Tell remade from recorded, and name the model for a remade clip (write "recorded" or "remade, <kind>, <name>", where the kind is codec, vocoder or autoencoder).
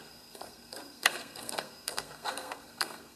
remade, codec, SNAC